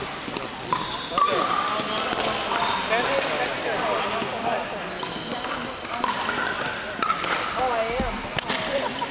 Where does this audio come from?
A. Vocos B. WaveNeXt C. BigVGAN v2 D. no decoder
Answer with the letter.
D